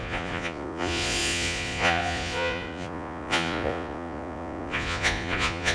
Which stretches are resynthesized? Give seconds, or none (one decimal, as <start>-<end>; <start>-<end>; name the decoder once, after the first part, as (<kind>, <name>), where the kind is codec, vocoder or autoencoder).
0.0-5.7 (vocoder, Vocos)